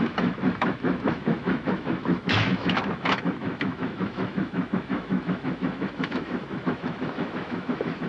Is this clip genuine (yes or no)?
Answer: no